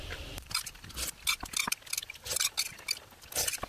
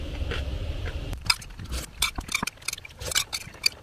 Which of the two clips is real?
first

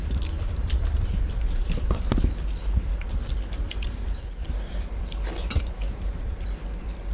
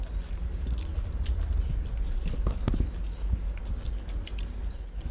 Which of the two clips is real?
second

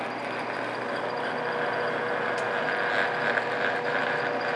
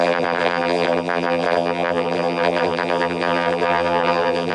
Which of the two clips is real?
first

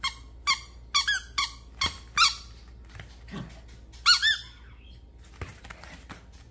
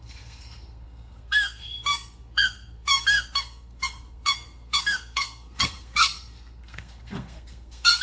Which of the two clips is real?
first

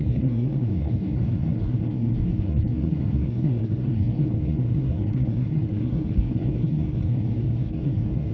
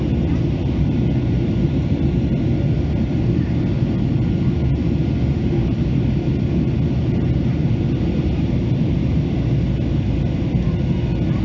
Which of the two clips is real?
second